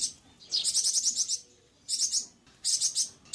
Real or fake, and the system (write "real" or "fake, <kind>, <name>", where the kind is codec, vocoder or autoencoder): real